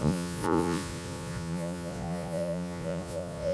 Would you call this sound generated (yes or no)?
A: yes